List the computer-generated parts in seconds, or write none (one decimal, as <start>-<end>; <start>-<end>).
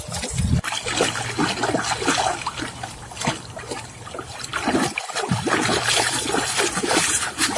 none